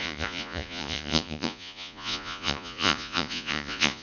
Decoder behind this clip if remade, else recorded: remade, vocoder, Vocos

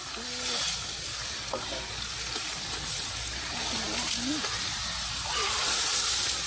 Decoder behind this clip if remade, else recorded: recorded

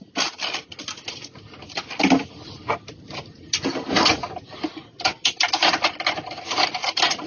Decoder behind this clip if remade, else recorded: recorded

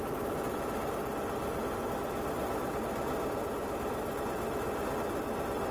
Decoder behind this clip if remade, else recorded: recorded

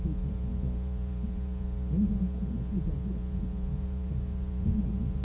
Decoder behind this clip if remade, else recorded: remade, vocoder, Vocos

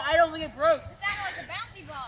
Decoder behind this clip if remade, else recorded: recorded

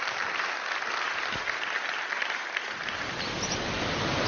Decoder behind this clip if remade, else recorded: recorded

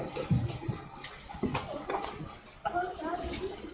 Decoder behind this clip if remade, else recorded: recorded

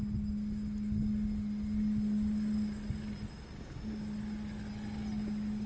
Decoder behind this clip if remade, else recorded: recorded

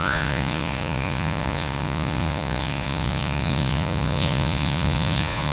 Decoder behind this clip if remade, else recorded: remade, vocoder, Vocos